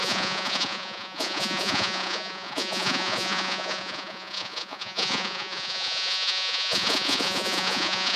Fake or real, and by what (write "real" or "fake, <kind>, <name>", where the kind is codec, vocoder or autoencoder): fake, vocoder, Vocos